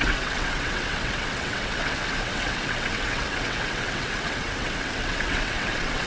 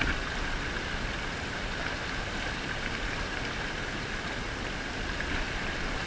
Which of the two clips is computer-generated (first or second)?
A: first